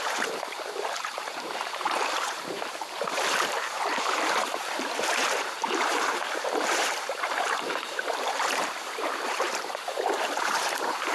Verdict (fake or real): fake